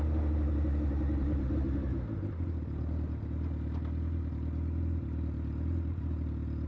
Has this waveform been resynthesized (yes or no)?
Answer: no